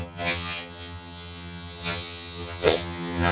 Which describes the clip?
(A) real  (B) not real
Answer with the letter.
B